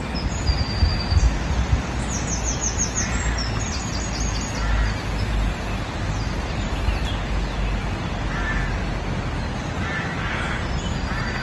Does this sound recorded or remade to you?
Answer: recorded